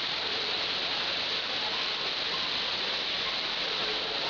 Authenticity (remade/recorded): recorded